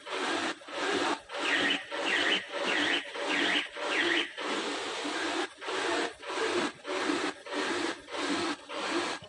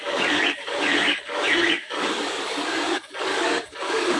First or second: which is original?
first